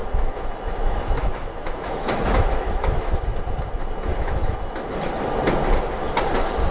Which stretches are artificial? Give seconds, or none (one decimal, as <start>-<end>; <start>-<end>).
0.0-3.2; 4.1-4.9